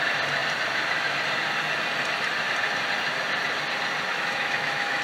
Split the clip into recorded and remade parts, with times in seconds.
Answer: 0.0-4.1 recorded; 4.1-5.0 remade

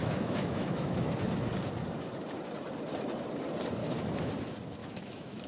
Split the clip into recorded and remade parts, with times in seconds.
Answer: 0.0-1.1 remade; 1.1-3.8 recorded; 3.8-4.3 remade; 4.3-4.8 recorded; 4.8-5.5 remade

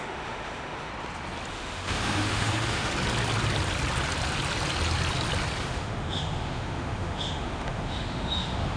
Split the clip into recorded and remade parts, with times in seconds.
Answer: 0.0-0.9 remade; 0.9-1.5 recorded; 1.5-2.9 remade; 2.9-5.6 recorded; 5.6-8.8 remade

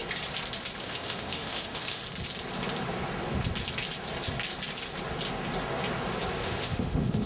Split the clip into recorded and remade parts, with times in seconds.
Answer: 0.0-0.8 recorded; 0.8-2.0 remade; 2.0-6.4 recorded; 6.4-7.3 remade

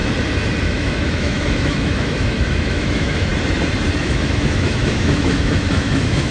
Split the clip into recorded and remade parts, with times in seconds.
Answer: 0.0-0.6 recorded; 0.6-3.3 remade; 3.3-4.0 recorded; 4.0-6.3 remade

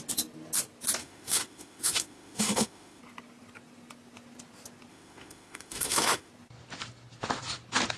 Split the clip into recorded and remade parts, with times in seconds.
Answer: 0.0-1.0 recorded; 1.0-3.0 remade; 3.0-4.9 recorded; 4.9-6.3 remade; 6.3-8.0 recorded

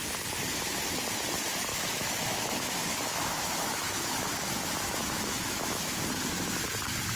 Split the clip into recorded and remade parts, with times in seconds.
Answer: 0.0-1.7 recorded; 1.7-6.0 remade; 6.0-7.2 recorded

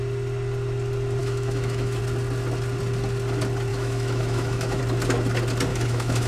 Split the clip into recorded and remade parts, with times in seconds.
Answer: 0.0-1.2 recorded; 1.2-2.0 remade; 2.0-3.7 recorded; 3.7-4.8 remade; 4.8-5.7 recorded; 5.7-6.3 remade